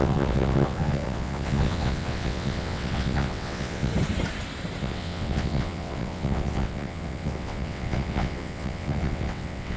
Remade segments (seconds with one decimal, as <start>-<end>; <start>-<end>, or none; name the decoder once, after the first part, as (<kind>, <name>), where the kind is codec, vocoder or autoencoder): 0.0-3.9 (vocoder, WaveNeXt); 4.8-9.8